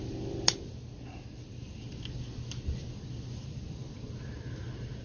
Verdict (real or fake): real